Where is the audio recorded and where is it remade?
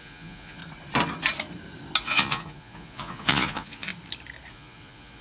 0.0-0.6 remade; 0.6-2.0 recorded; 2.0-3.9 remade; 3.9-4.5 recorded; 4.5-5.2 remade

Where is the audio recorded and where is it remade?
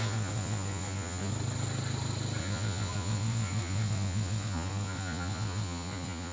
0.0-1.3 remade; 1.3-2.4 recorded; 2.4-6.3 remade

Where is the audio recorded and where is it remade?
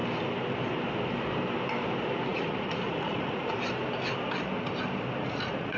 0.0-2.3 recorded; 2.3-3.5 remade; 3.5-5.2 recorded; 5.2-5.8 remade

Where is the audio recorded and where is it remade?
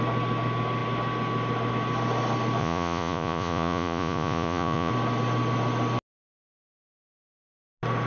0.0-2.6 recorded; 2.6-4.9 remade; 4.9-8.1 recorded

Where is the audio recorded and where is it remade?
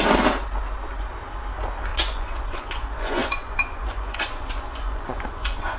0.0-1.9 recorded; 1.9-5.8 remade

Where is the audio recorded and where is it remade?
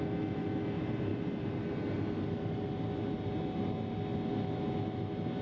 0.0-5.4 recorded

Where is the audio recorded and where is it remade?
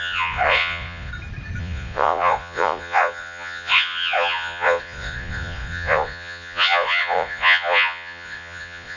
0.0-1.1 remade; 1.1-1.6 recorded; 1.6-9.0 remade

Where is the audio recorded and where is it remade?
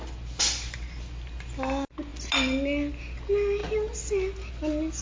0.0-5.0 recorded